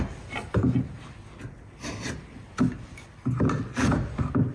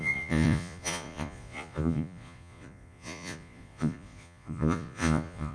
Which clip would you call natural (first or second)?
first